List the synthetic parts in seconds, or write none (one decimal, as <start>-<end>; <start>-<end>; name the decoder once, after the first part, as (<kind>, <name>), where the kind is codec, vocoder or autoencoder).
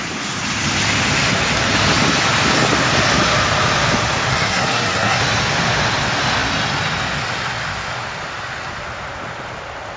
4.3-5.2 (codec, SNAC)